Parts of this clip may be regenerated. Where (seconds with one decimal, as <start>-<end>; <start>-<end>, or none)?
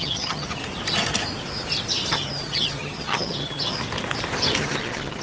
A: 0.0-0.6; 2.1-3.8; 4.6-5.2